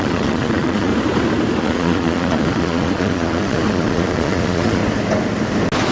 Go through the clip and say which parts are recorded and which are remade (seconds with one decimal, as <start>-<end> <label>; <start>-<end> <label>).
0.0-0.9 remade; 0.9-1.6 recorded; 1.6-4.8 remade; 4.8-5.9 recorded